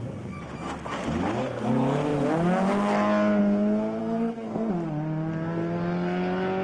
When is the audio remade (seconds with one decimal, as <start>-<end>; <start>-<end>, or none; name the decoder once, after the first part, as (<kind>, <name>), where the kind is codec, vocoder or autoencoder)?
4.0-4.7 (codec, SNAC)